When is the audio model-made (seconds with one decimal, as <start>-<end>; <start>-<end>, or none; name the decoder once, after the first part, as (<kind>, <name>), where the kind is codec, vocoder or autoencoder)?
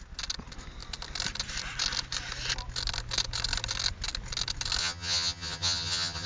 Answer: 4.8-6.3 (vocoder, HiFi-GAN)